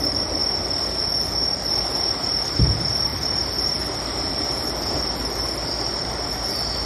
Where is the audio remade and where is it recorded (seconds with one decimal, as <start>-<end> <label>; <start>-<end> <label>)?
0.0-6.9 recorded